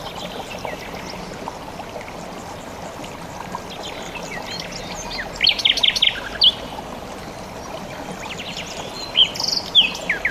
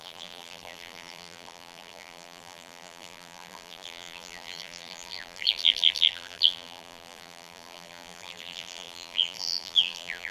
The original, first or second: first